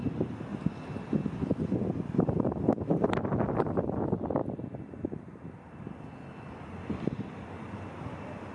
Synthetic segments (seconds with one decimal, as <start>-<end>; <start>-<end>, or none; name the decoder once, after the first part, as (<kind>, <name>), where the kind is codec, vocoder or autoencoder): 0.0-0.5 (vocoder, BigVGAN v2); 2.8-4.4; 7.7-8.5